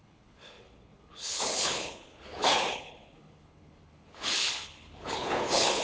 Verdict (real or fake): fake